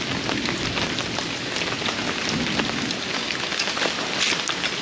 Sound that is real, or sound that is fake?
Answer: real